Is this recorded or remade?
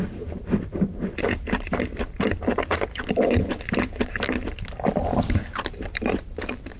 remade